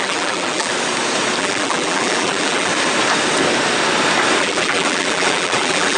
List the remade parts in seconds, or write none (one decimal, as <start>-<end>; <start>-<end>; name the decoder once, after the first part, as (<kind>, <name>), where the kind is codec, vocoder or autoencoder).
0.0-0.7 (vocoder, BigVGAN v2); 1.4-2.7; 4.4-6.0